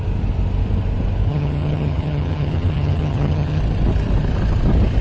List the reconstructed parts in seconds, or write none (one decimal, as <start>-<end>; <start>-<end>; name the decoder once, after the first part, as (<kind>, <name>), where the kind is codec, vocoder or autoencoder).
1.3-3.6 (vocoder, HiFi-GAN)